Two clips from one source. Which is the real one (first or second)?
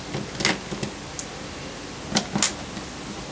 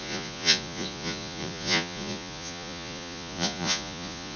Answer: first